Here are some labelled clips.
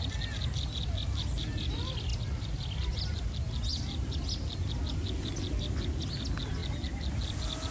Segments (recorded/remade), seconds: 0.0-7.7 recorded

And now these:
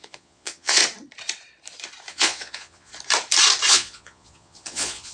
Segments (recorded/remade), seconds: 0.0-0.8 remade; 0.8-2.1 recorded; 2.1-2.9 remade; 2.9-3.7 recorded; 3.7-5.1 remade